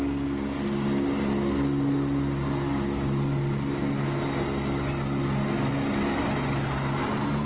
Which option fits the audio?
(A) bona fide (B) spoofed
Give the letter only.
A